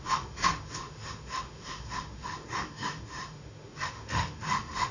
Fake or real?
fake